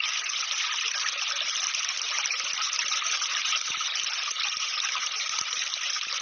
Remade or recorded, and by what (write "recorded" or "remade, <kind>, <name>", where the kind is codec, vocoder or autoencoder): recorded